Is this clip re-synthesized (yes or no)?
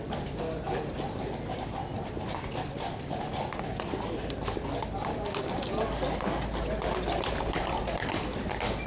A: no